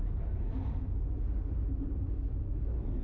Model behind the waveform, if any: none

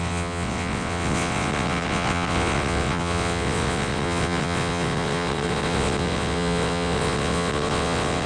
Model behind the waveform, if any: vocoder, WaveNeXt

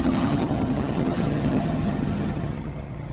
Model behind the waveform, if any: vocoder, HiFi-GAN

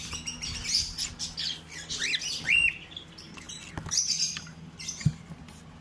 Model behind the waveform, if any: none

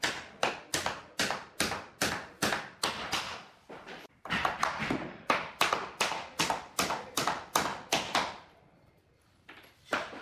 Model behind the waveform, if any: none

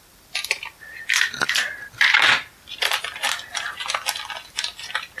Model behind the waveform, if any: vocoder, BigVGAN v2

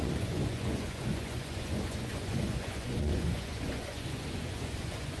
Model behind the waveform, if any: vocoder, Vocos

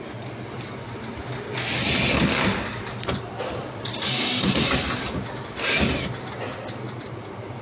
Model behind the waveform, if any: none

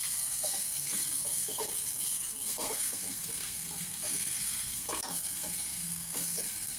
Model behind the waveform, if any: codec, SNAC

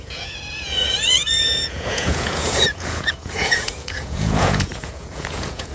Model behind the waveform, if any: vocoder, Vocos